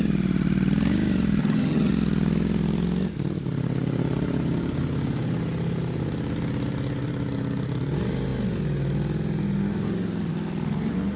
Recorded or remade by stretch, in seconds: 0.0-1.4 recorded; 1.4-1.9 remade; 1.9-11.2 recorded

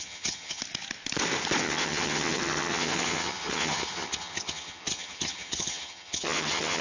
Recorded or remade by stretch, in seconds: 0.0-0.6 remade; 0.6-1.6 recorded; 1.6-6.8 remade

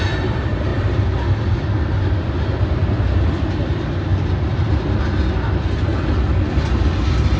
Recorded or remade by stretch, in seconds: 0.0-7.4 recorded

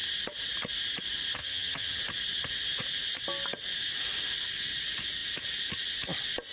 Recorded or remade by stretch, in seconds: 0.0-1.4 recorded; 1.4-2.0 remade; 2.0-6.5 recorded